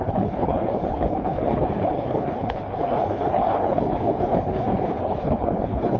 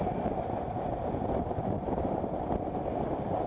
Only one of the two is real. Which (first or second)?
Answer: second